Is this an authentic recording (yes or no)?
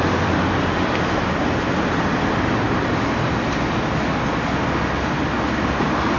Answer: yes